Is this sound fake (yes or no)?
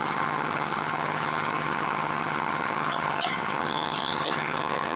yes